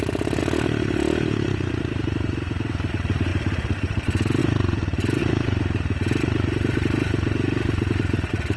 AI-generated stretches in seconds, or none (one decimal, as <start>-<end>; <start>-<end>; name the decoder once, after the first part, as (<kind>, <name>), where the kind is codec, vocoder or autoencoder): 0.0-0.4 (vocoder, BigVGAN v2); 1.9-4.4; 5.2-8.6